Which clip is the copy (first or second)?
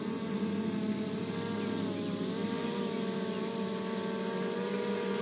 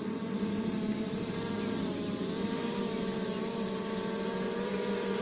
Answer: second